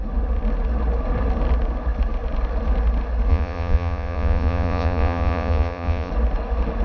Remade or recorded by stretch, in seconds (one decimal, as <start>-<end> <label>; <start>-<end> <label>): 0.0-3.3 recorded; 3.3-6.1 remade; 6.1-6.8 recorded